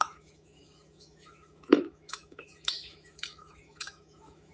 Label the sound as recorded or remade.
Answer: remade